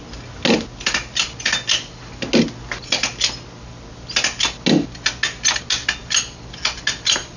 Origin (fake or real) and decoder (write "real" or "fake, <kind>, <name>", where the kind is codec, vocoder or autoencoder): real